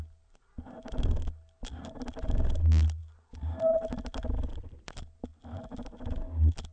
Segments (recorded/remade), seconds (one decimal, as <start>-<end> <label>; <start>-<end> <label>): 0.0-6.7 recorded